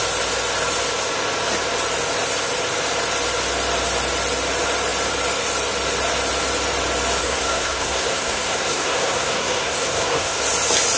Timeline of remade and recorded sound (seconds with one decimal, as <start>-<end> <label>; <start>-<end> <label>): 0.0-7.2 recorded; 7.2-10.4 remade; 10.4-11.0 recorded